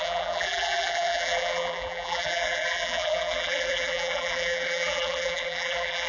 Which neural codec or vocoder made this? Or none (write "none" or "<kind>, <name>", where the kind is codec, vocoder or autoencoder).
vocoder, BigVGAN v2